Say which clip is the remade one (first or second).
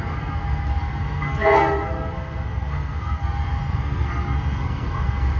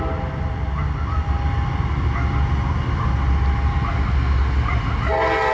first